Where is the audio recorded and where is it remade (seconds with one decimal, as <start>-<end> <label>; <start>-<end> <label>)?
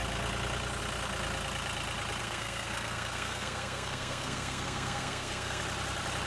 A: 0.0-2.2 recorded; 2.2-5.6 remade; 5.6-6.3 recorded